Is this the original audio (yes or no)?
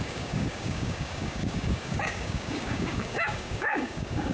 no